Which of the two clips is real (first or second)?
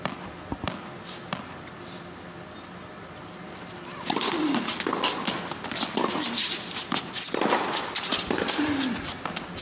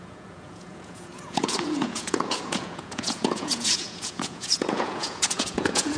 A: first